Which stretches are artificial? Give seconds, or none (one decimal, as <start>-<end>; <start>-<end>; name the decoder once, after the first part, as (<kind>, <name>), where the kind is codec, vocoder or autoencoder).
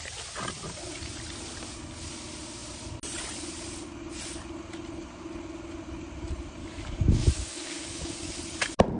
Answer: 6.6-8.4 (codec, DAC)